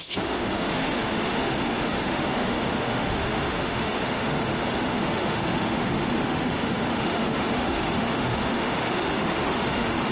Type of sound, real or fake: fake